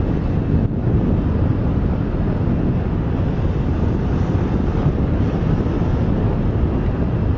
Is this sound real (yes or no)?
yes